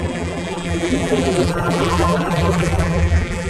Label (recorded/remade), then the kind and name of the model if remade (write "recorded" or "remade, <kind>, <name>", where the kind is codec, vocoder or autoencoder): remade, vocoder, BigVGAN v2